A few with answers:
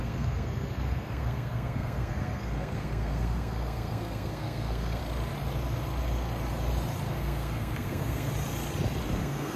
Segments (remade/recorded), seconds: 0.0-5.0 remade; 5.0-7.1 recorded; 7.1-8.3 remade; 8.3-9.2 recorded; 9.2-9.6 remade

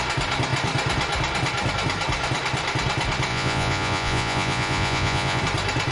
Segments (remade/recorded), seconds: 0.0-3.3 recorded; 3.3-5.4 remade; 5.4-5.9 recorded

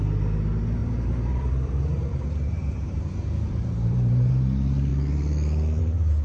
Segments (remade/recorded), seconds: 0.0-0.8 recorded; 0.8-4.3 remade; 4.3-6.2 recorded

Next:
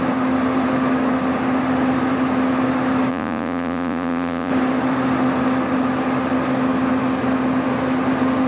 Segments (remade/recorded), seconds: 0.0-3.1 recorded; 3.1-4.5 remade; 4.5-8.5 recorded

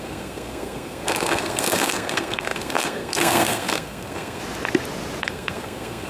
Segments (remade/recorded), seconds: 0.0-4.4 remade; 4.4-5.2 recorded; 5.2-6.1 remade